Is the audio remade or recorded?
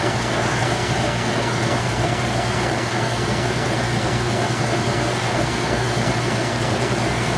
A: remade